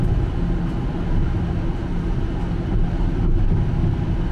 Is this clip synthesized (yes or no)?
no